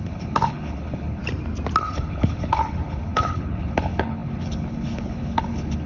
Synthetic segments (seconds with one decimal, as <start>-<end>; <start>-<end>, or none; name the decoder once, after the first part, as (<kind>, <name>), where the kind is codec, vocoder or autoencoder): 0.0-1.2 (codec, HILCodec); 1.8-5.9

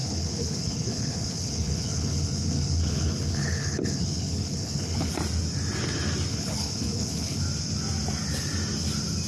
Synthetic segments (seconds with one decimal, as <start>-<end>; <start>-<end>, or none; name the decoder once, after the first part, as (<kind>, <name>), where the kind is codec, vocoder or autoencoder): 0.0-5.1 (codec, HILCodec); 6.3-7.4

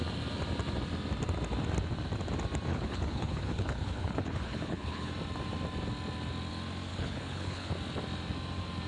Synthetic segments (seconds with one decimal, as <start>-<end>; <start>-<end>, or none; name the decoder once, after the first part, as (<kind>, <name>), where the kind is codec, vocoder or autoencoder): 2.7-5.1 (codec, HILCodec); 6.9-7.7

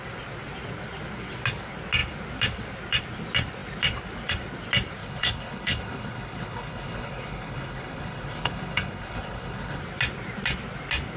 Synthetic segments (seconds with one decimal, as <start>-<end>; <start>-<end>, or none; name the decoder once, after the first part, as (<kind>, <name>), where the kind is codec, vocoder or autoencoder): 5.0-9.8 (codec, HILCodec)

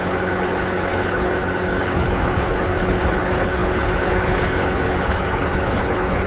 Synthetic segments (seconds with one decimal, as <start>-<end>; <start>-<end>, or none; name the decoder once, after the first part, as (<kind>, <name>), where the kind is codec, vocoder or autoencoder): 0.0-6.3 (codec, HILCodec)

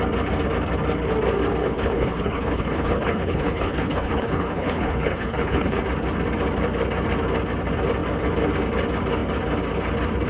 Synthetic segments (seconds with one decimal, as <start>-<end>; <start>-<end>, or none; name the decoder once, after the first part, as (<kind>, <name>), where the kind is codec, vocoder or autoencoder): 1.6-5.8 (codec, HILCodec)

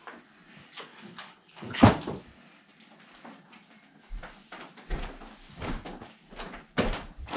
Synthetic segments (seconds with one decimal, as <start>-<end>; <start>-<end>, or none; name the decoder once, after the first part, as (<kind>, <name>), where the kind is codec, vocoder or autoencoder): 0.9-1.9 (codec, HILCodec)